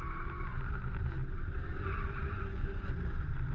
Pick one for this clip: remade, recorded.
remade